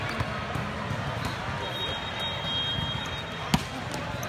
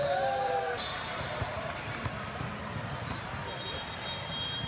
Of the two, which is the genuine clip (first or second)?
first